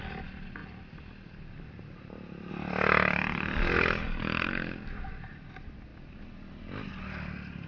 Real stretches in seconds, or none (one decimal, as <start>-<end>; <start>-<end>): 0.0-7.7